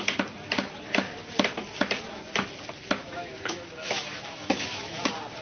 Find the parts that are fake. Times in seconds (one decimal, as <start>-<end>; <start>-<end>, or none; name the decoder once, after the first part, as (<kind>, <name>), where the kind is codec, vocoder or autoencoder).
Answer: 3.0-5.0 (autoencoder, DAC-VAE)